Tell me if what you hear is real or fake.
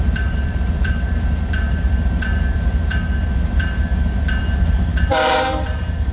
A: fake